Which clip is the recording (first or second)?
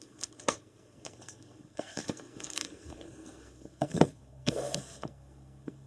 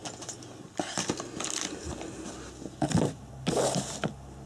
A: second